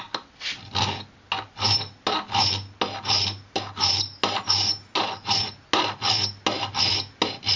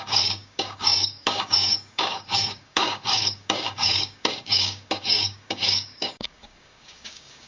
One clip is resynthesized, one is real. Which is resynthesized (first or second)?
second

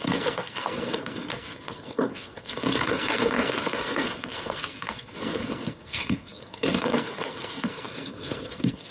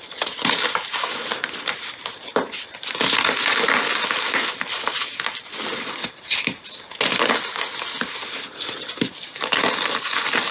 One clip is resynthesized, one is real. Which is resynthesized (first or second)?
first